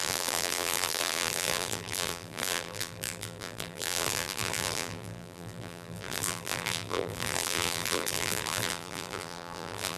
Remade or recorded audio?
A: remade